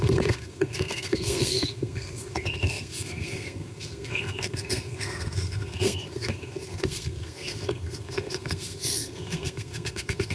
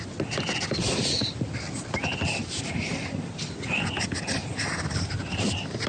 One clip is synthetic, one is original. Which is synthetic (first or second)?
first